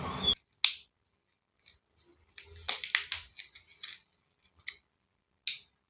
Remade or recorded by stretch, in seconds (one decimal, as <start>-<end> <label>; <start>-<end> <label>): 0.0-5.9 recorded